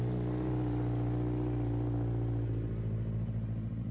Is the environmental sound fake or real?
real